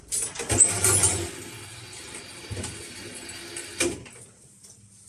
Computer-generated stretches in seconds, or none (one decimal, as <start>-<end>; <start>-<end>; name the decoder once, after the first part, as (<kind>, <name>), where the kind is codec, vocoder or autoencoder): none